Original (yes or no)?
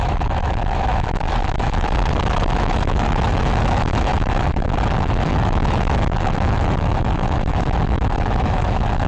no